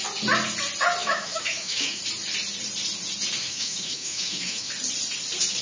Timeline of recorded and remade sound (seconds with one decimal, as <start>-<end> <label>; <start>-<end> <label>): 0.0-1.0 recorded; 1.0-2.0 remade; 2.0-3.4 recorded; 3.4-4.7 remade; 4.7-5.6 recorded